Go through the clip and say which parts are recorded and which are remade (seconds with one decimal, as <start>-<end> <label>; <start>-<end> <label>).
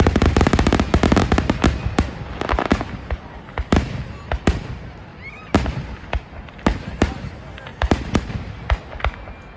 0.0-9.6 recorded